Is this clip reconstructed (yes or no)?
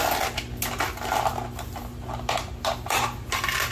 no